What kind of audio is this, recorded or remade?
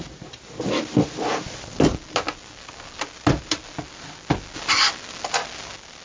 recorded